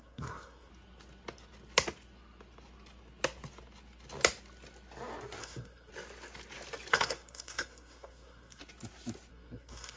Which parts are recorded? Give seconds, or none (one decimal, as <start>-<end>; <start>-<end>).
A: 0.7-5.4; 5.9-6.9; 8.6-9.3